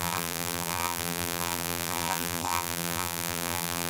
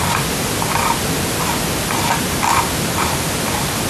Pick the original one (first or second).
second